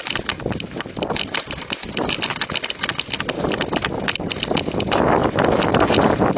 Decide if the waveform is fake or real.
real